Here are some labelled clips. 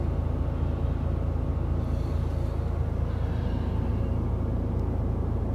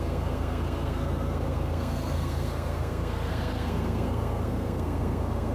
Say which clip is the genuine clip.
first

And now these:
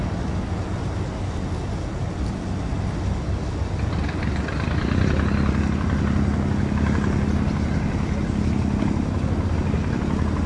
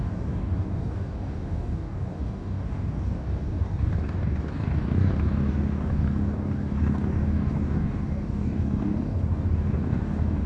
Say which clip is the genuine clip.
first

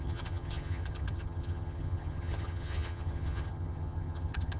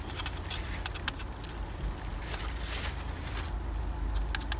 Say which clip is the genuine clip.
second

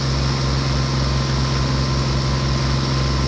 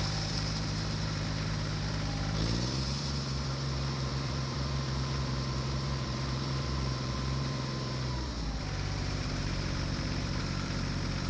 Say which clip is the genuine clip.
first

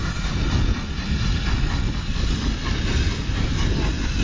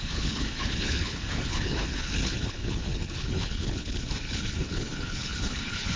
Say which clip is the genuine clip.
first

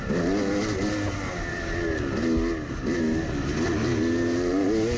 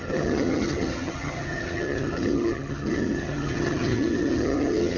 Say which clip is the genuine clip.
first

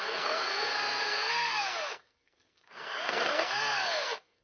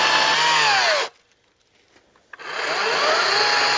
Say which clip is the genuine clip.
second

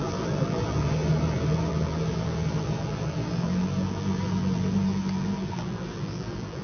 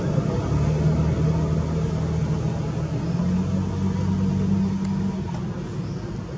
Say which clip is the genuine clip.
second